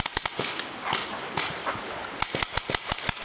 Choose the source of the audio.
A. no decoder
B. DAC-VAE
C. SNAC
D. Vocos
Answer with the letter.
A